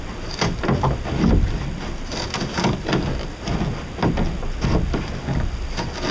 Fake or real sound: real